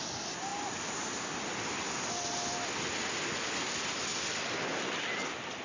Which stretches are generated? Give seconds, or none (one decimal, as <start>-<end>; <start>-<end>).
none